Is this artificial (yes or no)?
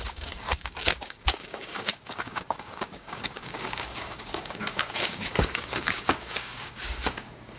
yes